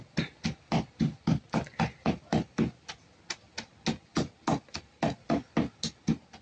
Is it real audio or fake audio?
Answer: real